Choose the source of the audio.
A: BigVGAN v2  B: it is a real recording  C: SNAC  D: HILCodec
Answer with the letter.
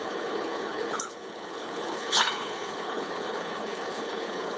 D